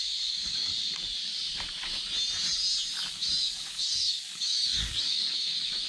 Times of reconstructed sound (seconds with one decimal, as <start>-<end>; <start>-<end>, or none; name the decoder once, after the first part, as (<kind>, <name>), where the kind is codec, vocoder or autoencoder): 0.0-0.7 (codec, DAC); 3.1-5.9